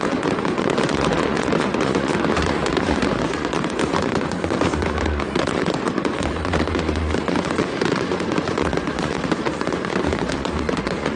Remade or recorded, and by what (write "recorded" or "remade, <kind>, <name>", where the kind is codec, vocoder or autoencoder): remade, vocoder, Vocos